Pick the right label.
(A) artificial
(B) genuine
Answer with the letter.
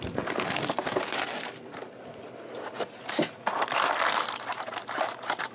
A